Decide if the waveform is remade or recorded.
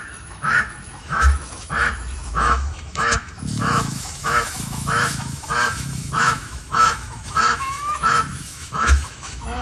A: remade